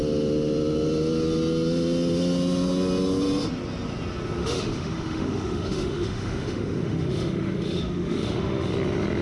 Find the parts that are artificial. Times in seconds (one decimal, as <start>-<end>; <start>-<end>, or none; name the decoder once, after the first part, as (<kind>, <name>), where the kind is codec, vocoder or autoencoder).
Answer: 4.4-8.7 (autoencoder, DAC-VAE)